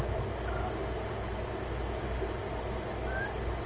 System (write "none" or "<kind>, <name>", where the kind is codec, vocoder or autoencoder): none